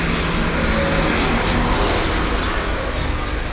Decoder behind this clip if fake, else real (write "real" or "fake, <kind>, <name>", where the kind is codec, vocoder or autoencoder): real